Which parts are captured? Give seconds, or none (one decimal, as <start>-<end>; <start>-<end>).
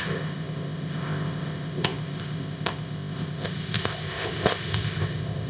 none